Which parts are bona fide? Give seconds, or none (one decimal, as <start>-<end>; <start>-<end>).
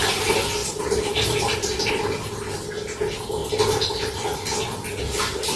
0.0-0.6; 1.9-5.6